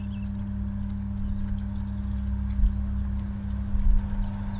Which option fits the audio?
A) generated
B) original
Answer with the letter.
B